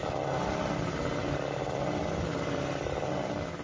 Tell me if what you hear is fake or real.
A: real